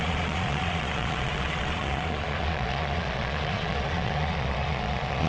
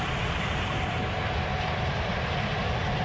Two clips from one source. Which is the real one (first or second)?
second